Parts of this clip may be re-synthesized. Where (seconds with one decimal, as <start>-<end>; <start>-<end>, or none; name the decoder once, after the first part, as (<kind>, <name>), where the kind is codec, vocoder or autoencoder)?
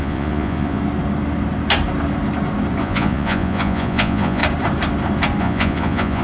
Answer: 0.0-0.8 (vocoder, Vocos); 2.8-4.4; 5.4-6.2